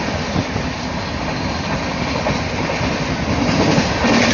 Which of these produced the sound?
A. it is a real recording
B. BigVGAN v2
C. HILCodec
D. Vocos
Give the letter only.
A